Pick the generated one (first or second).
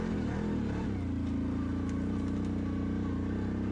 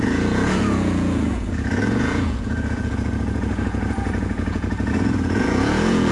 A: second